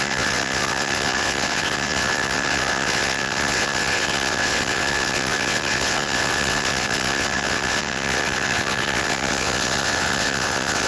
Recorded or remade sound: remade